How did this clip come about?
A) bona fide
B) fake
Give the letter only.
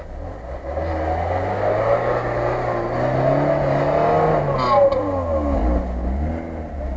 A